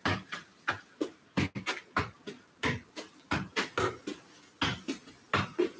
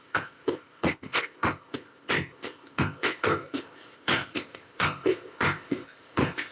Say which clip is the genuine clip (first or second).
first